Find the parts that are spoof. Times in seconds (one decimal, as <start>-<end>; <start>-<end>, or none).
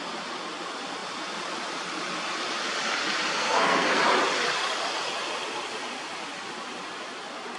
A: 3.3-4.0